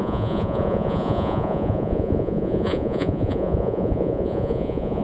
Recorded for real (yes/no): no